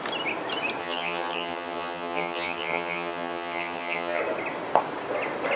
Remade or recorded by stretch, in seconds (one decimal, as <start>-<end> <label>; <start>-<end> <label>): 0.0-0.8 recorded; 0.8-4.2 remade; 4.2-5.6 recorded